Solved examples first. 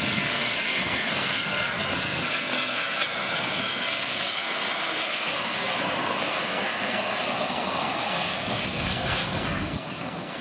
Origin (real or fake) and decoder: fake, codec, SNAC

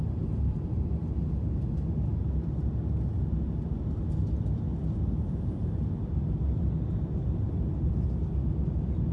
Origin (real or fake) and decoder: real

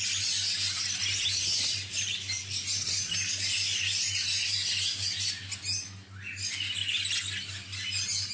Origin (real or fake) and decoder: real